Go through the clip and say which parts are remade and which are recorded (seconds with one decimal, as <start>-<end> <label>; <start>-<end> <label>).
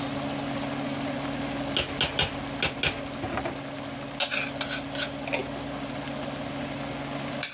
0.0-7.5 recorded